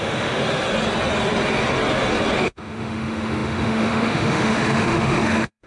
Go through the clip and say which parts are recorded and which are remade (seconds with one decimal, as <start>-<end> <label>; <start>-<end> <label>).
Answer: 0.0-0.4 remade; 0.4-2.4 recorded; 2.4-5.7 remade